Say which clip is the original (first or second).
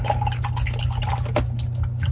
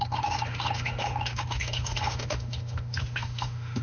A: first